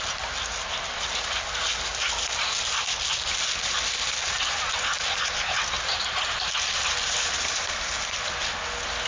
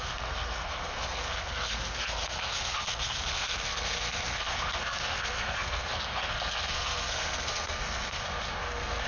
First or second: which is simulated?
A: second